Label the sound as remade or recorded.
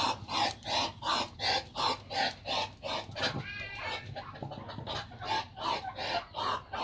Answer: recorded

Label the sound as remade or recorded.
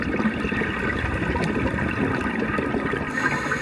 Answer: recorded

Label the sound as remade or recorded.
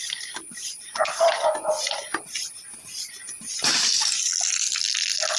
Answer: recorded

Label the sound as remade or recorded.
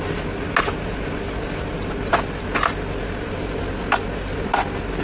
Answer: recorded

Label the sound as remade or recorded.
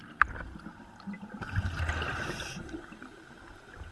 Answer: recorded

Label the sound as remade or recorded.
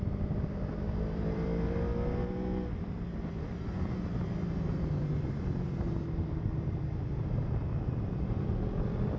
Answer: remade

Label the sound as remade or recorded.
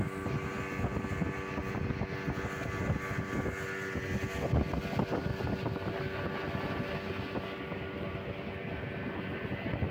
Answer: recorded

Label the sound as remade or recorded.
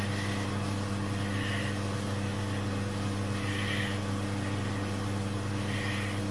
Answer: recorded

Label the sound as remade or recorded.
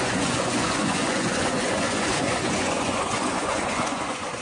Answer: remade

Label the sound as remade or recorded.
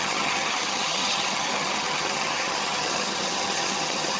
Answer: remade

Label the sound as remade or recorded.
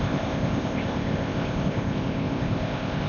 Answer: remade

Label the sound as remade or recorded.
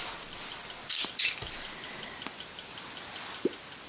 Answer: recorded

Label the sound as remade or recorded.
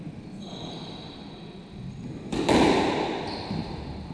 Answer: recorded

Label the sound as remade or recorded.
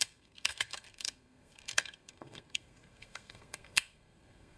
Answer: remade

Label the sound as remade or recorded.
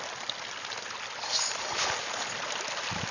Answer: recorded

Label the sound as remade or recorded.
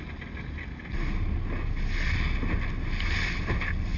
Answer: recorded